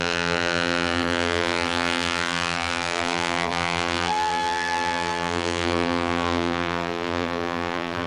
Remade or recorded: remade